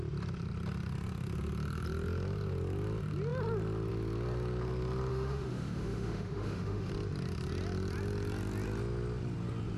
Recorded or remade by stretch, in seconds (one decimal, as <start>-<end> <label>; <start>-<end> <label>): 0.0-5.1 recorded; 5.1-6.9 remade; 6.9-9.8 recorded